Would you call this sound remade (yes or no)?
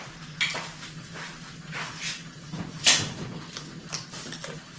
no